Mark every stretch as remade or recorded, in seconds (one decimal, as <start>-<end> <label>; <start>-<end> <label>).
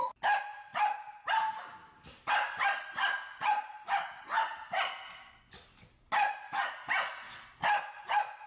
0.0-8.5 recorded